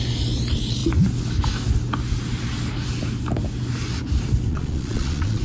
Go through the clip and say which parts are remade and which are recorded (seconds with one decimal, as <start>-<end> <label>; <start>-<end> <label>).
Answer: 0.0-4.5 recorded; 4.5-5.4 remade